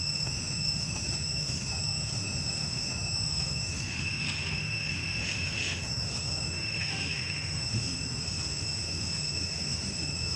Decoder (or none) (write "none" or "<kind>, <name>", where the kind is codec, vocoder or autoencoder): autoencoder, DAC-VAE